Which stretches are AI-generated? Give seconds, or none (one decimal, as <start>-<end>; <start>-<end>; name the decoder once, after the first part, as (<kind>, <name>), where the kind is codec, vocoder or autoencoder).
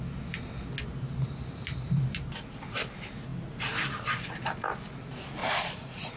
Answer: 5.4-6.2 (vocoder, Vocos)